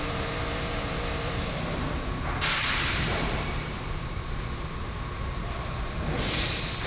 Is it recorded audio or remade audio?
remade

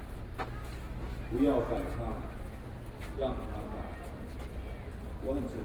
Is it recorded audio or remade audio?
recorded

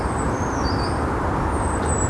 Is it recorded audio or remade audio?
remade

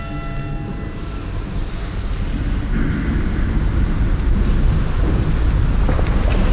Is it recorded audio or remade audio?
recorded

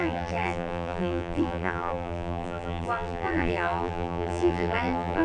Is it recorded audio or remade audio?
remade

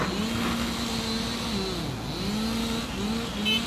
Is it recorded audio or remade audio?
recorded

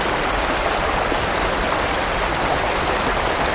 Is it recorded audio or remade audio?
remade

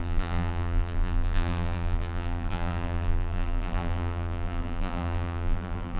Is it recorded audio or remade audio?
remade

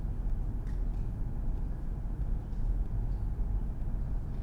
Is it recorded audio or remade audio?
recorded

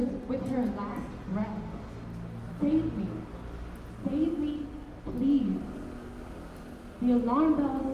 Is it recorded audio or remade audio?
recorded